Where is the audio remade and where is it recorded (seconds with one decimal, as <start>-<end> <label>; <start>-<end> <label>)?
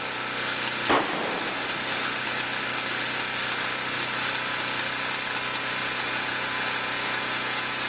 0.0-5.8 recorded; 5.8-7.9 remade